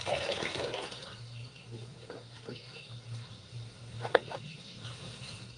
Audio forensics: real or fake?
fake